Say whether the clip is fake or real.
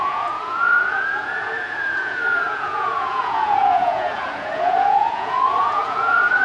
fake